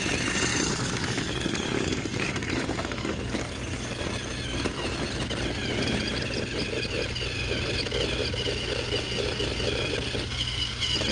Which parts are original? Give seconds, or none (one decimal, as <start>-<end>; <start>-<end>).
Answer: 0.0-0.5; 4.0-11.1